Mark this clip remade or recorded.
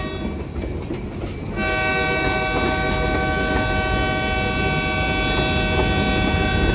recorded